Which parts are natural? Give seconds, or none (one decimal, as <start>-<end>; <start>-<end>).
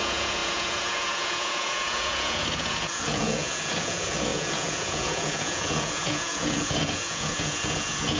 none